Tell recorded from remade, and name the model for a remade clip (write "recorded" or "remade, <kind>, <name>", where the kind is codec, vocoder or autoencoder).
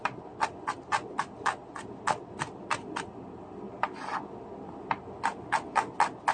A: recorded